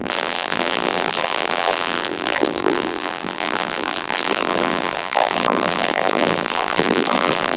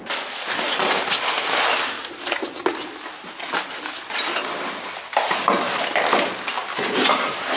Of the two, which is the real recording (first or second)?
second